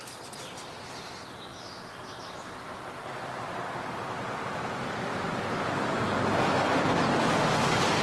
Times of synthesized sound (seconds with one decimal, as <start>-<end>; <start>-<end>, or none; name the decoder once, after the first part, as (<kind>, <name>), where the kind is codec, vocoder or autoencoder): none